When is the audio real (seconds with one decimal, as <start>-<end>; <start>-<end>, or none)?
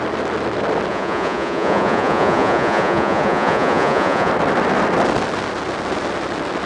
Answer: 0.0-0.9; 4.3-6.7